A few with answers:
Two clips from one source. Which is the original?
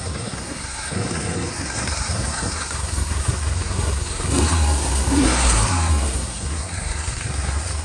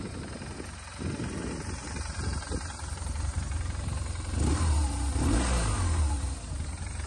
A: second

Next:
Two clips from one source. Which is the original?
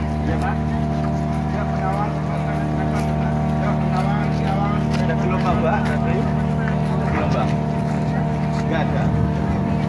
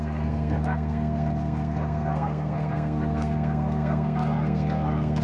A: first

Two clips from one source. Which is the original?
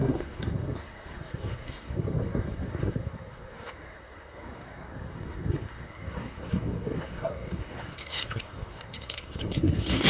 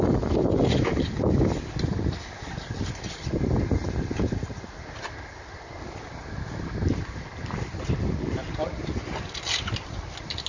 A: second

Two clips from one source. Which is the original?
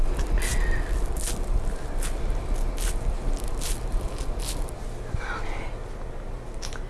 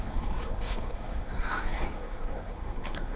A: first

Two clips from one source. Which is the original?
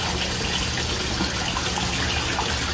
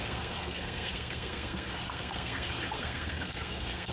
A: first